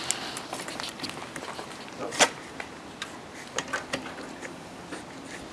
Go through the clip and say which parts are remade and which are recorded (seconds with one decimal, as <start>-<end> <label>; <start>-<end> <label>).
0.0-5.5 recorded